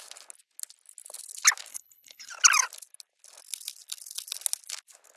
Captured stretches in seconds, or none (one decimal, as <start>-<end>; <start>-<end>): 0.0-1.7; 2.3-5.2